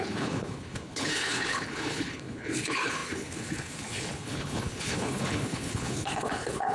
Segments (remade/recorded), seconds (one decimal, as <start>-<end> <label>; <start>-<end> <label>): 0.0-6.7 remade